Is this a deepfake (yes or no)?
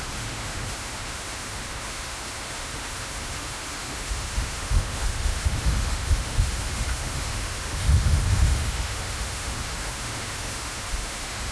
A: yes